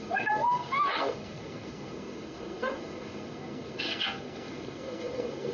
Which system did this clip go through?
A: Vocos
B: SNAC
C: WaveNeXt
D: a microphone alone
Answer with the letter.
B